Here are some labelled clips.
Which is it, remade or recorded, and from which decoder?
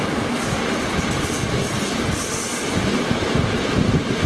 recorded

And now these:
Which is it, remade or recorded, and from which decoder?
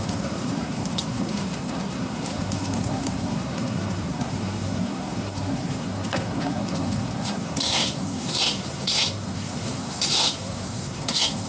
remade, codec, SNAC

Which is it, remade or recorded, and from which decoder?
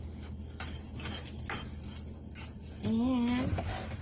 recorded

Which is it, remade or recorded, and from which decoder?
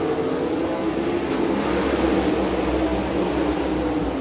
recorded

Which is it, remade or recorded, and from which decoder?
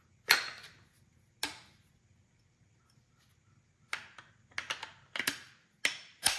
recorded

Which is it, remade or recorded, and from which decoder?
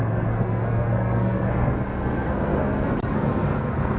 remade, codec, SNAC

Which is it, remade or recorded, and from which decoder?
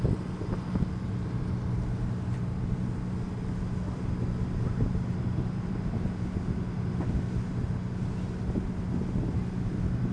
recorded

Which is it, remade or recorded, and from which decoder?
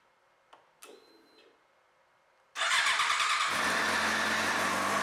recorded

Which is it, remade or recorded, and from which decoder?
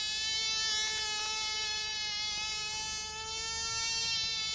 recorded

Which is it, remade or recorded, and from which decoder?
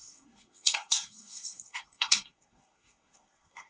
remade, codec, SNAC